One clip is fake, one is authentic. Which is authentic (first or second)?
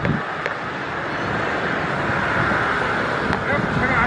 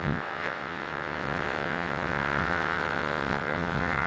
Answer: first